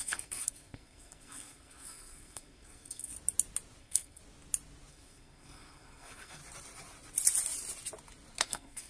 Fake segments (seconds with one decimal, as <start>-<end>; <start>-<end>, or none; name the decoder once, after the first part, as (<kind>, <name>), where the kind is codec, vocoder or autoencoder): 0.0-3.1 (codec, SNAC); 3.8-4.2; 4.9-6.4; 8.4-8.9